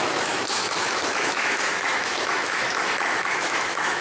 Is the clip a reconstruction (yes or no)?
yes